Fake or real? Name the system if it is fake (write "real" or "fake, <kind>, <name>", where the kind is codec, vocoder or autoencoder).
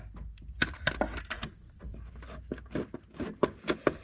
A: real